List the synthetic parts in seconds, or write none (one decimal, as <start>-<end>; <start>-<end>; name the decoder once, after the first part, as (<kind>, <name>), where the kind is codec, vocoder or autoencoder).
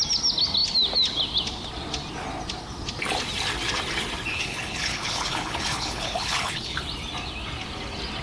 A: 4.3-6.8 (codec, HILCodec)